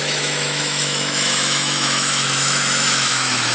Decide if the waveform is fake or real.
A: fake